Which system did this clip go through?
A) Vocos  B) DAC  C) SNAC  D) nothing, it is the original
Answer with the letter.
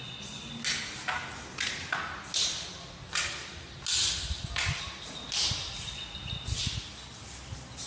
D